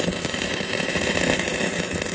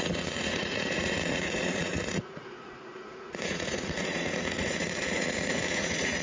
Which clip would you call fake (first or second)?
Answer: second